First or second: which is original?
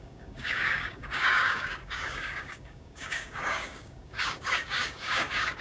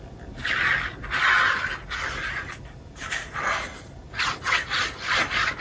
second